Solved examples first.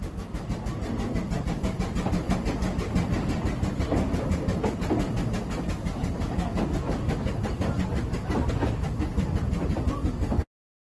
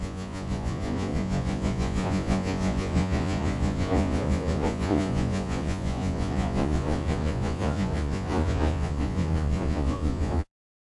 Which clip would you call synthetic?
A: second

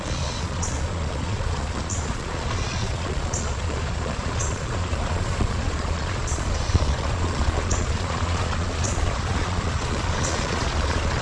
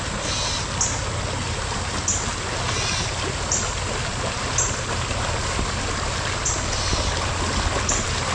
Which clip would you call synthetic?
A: first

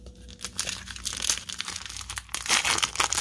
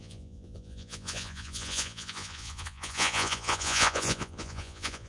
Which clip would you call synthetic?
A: second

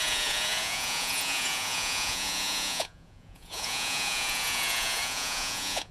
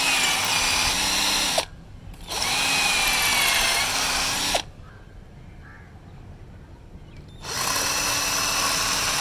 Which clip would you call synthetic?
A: first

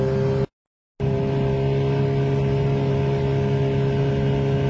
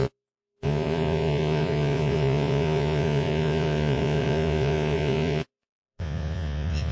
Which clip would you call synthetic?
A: second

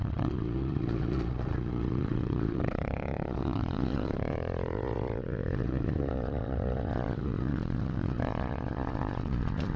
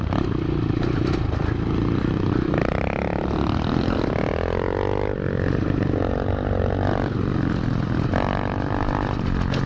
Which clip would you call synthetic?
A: first